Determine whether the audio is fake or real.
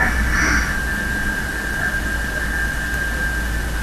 real